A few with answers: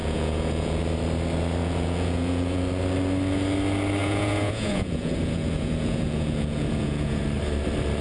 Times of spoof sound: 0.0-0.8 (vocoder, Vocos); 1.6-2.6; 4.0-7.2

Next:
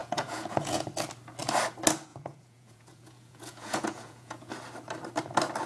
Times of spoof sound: 0.0-0.9 (vocoder, Vocos); 2.1-4.5

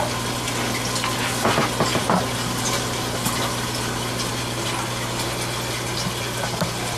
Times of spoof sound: none